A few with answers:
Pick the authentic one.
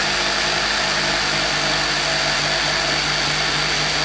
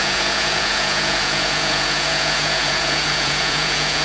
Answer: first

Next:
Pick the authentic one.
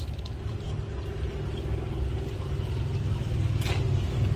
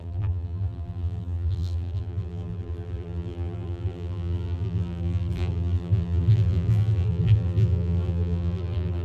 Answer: first